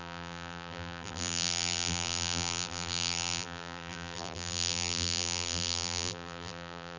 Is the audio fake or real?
fake